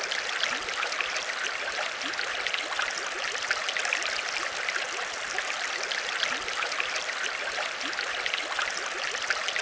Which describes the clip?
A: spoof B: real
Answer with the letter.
B